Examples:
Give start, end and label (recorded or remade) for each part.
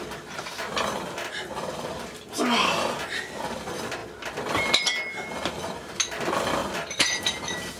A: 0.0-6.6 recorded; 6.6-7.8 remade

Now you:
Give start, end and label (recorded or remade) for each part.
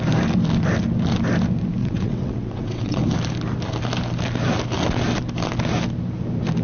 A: 0.0-1.8 recorded; 1.8-3.0 remade; 3.0-6.6 recorded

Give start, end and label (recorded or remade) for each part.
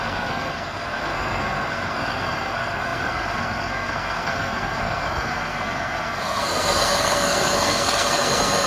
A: 0.0-8.7 remade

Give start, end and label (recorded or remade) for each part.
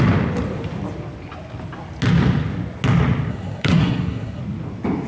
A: 0.0-3.3 recorded; 3.3-4.4 remade; 4.4-5.1 recorded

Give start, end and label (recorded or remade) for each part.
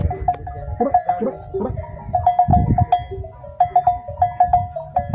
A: 0.0-5.1 recorded